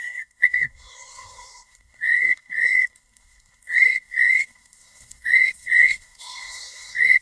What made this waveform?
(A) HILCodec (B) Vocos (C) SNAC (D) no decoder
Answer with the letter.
C